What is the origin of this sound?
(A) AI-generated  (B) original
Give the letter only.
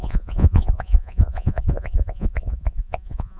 A